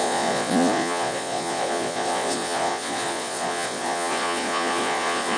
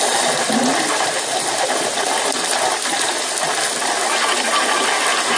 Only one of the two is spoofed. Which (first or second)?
first